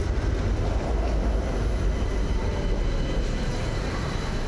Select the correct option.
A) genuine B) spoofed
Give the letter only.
A